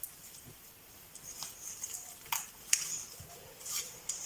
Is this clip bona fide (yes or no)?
yes